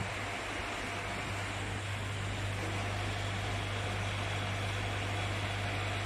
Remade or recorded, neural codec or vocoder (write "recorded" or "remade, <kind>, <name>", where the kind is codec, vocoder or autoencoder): recorded